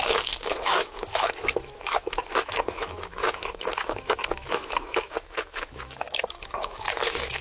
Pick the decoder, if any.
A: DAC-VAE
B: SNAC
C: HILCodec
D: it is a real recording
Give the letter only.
A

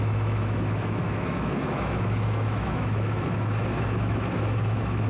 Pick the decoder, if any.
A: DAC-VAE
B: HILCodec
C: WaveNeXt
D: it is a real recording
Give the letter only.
A